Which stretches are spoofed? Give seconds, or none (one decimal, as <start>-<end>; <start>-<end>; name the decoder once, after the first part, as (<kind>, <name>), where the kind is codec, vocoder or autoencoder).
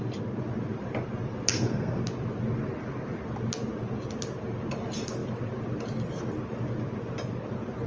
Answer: 1.5-2.0 (codec, SNAC)